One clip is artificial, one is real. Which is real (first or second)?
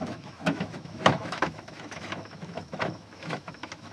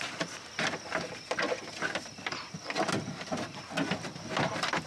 second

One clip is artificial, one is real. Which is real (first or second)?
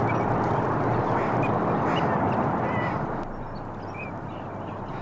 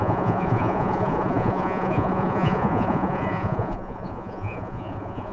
first